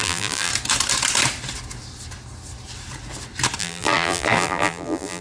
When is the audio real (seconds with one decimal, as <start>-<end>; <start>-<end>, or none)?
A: 0.5-3.6

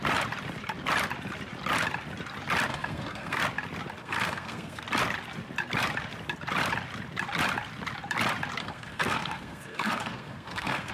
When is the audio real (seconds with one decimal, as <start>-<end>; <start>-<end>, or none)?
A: 0.0-2.7; 3.4-4.0; 4.8-8.6

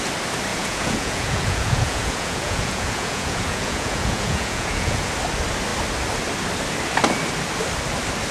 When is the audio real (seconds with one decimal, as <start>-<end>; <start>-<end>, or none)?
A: 0.0-0.5; 5.1-8.3

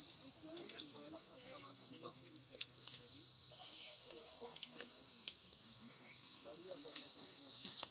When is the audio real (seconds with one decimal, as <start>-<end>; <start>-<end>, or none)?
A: 0.0-0.5

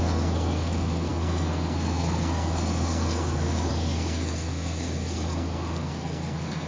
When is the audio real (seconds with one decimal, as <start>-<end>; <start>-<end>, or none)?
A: none